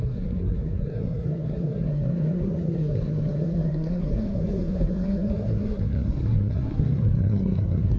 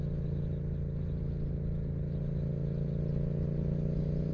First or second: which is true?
second